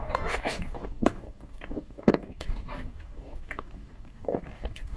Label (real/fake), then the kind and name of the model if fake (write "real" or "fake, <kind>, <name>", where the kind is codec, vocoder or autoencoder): fake, codec, DAC